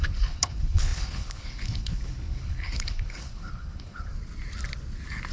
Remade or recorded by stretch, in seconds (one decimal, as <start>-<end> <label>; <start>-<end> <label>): 0.0-4.1 remade; 4.1-5.3 recorded